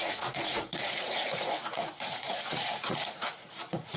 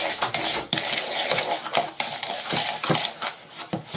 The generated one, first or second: first